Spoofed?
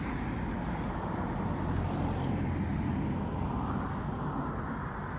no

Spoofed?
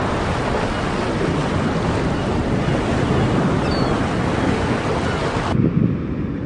no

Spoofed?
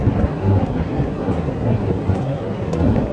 yes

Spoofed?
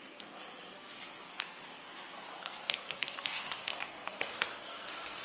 yes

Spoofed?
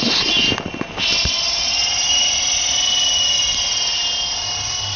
no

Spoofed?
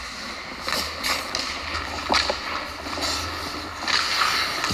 no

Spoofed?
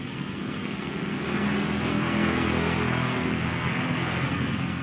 yes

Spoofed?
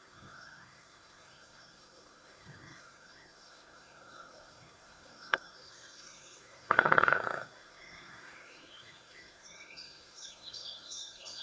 yes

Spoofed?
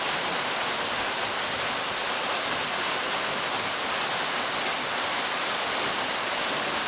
no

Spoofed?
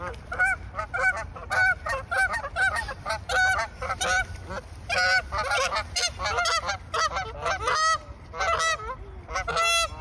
no